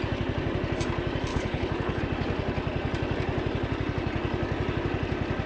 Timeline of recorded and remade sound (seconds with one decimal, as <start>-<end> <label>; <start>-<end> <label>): 0.0-1.3 recorded; 1.3-2.0 remade; 2.0-5.5 recorded